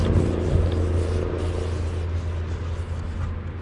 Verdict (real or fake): real